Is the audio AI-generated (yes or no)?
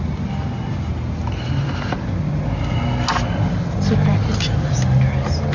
no